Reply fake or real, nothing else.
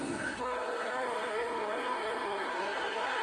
fake